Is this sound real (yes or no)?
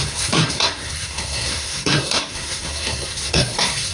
no